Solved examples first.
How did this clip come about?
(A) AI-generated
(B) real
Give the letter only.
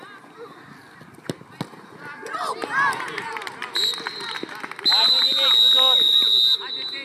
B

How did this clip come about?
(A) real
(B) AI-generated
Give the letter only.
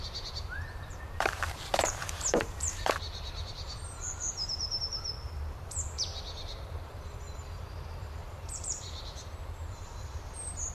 B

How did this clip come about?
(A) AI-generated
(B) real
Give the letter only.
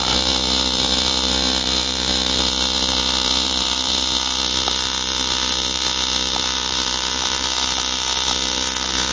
A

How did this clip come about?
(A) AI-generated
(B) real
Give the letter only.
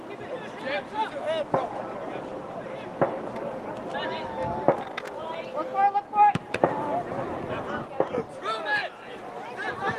B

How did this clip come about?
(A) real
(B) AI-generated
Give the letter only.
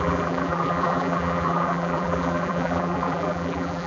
B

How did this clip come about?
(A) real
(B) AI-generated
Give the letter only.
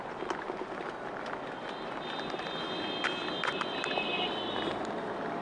A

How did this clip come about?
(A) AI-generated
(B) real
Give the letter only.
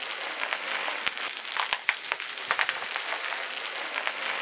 B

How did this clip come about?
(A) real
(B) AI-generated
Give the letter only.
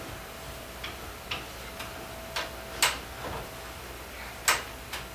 A